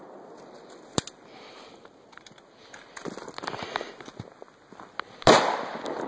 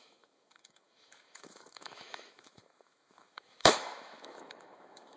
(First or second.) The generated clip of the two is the second